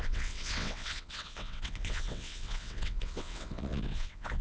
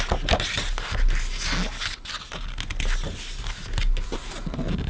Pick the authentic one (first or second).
second